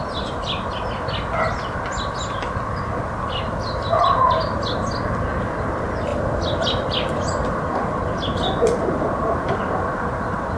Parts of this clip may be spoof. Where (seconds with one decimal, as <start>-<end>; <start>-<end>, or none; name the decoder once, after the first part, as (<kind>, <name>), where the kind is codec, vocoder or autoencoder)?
6.1-8.1 (vocoder, BigVGAN v2)

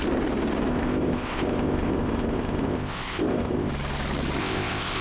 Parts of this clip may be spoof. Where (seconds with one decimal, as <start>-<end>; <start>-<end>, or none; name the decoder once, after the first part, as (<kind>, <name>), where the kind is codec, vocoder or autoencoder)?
0.7-3.7 (codec, ZipCodec); 4.4-5.0

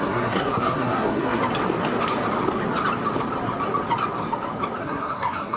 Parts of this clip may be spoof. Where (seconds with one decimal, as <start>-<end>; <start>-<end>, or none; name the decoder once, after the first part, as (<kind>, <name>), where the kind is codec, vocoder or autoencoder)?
0.0-1.4 (codec, SNAC); 4.8-5.6

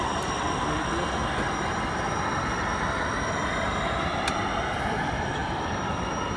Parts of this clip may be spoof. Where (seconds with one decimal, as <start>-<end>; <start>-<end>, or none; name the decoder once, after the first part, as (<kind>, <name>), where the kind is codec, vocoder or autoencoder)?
none

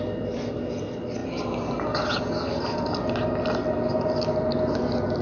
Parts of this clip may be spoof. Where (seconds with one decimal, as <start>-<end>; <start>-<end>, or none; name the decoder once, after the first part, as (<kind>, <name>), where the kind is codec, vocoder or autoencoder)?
none

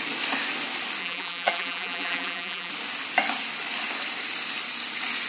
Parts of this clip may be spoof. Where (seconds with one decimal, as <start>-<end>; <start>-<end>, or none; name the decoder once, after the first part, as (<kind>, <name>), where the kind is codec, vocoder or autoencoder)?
1.0-2.7 (vocoder, BigVGAN v2)